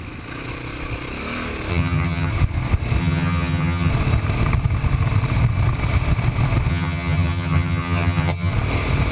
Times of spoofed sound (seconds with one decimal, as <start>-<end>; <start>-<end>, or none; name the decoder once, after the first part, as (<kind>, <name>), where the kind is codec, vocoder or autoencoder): 1.7-2.3 (vocoder, HiFi-GAN); 3.0-3.9; 6.7-8.5